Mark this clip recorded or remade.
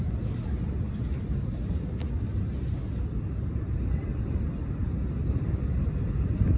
recorded